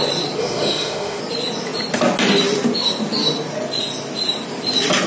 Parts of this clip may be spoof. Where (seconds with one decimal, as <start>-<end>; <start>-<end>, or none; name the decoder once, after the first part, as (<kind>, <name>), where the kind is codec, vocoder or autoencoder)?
0.4-1.2 (autoencoder, DAC-VAE)